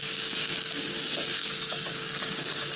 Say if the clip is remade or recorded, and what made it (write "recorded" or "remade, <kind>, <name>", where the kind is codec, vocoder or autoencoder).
remade, codec, DAC